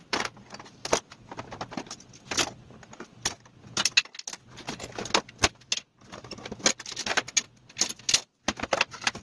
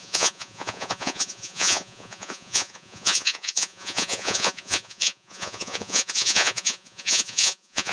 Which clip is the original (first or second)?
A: first